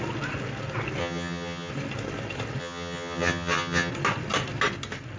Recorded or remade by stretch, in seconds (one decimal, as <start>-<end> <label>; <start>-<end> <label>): 0.0-1.0 recorded; 1.0-1.7 remade; 1.7-2.6 recorded; 2.6-3.9 remade; 3.9-5.2 recorded